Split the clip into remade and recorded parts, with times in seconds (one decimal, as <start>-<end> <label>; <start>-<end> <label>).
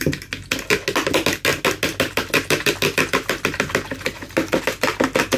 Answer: 0.0-5.4 recorded